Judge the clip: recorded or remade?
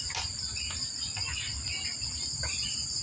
recorded